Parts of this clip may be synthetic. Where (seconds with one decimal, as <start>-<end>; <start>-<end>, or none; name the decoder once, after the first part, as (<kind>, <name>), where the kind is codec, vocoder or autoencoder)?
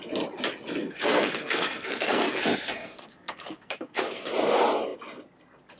0.8-4.3 (codec, SNAC)